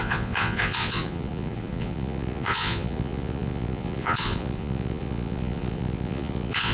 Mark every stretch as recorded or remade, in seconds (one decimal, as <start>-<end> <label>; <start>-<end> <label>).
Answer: 0.0-6.7 remade